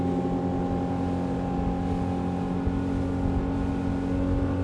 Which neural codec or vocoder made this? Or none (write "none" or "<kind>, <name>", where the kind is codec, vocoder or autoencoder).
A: none